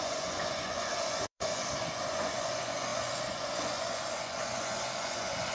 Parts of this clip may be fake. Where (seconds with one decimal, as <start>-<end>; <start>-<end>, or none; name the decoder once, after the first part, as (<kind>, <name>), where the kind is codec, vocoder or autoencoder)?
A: 0.0-5.5 (vocoder, Vocos)